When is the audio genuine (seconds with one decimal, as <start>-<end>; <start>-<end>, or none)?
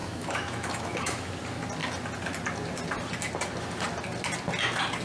1.3-5.0